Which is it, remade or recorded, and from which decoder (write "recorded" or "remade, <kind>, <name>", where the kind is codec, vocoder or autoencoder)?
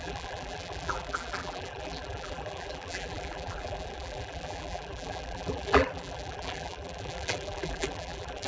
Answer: remade, vocoder, BigVGAN v2